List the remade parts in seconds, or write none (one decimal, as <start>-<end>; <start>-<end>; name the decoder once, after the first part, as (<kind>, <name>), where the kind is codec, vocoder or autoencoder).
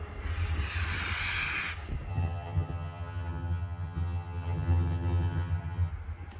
2.1-5.9 (vocoder, HiFi-GAN)